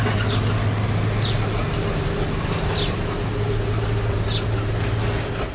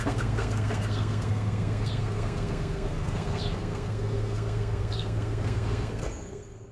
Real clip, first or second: first